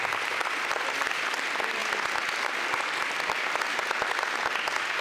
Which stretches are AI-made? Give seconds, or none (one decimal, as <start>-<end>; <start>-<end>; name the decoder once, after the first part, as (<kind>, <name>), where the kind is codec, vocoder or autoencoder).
none